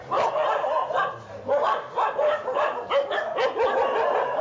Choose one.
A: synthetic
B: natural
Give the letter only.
B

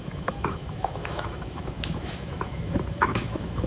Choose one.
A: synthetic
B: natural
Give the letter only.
A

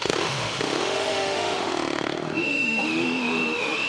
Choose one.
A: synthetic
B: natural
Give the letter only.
A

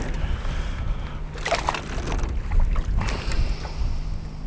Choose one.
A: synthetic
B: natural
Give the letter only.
B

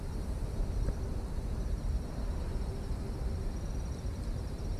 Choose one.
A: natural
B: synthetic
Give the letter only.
A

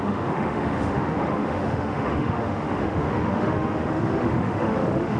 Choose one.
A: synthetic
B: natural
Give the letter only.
A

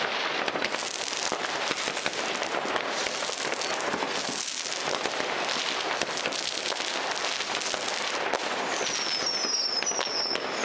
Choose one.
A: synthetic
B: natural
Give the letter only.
B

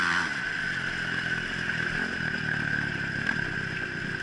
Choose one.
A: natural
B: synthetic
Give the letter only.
A